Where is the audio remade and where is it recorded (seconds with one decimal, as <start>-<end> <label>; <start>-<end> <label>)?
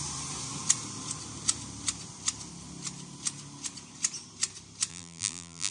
0.0-4.9 recorded; 4.9-5.7 remade